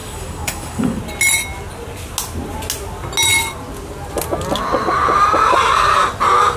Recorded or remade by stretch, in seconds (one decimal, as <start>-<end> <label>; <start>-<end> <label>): 0.0-1.0 remade; 1.0-6.6 recorded